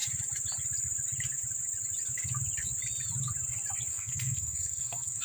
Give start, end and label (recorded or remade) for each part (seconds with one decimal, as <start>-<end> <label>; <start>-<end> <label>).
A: 0.0-3.9 recorded; 3.9-5.2 remade

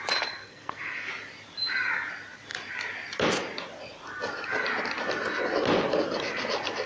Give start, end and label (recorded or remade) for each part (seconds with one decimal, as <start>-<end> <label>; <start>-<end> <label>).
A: 0.0-0.4 recorded; 0.4-1.1 remade; 1.1-6.9 recorded

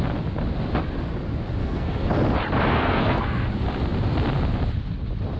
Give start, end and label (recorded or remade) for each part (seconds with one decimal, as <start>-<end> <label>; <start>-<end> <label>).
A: 0.0-1.6 recorded; 1.6-2.1 remade; 2.1-2.7 recorded; 2.7-3.5 remade; 3.5-5.4 recorded

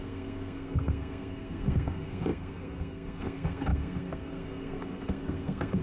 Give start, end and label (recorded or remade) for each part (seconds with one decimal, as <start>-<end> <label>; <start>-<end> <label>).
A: 0.0-5.8 remade

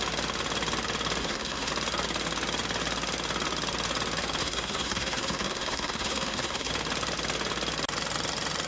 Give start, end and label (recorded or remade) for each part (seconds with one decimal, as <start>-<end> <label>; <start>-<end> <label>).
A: 0.0-1.2 recorded; 1.2-1.7 remade; 1.7-4.4 recorded; 4.4-6.7 remade; 6.7-8.7 recorded

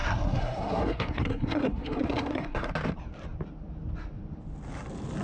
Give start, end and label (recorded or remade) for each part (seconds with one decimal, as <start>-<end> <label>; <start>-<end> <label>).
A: 0.0-2.7 remade; 2.7-5.2 recorded

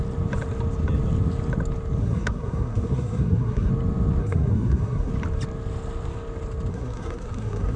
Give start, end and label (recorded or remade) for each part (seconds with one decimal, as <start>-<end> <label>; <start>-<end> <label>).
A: 0.0-2.0 recorded; 2.0-3.7 remade; 3.7-4.2 recorded; 4.2-5.1 remade; 5.1-6.7 recorded; 6.7-7.8 remade

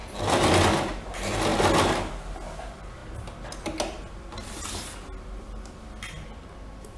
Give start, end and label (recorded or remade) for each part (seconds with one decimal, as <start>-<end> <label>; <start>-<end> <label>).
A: 0.0-7.0 recorded